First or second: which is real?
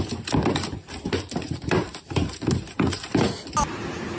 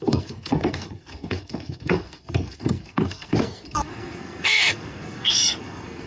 first